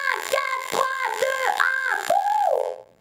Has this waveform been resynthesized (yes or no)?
yes